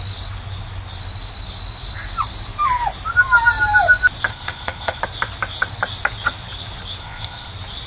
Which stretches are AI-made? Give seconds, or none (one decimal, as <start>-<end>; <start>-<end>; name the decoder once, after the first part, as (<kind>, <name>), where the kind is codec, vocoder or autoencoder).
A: 4.3-5.0 (codec, ZipCodec); 7.0-7.5